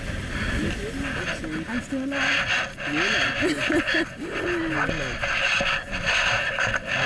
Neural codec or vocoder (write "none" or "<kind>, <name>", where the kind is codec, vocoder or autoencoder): none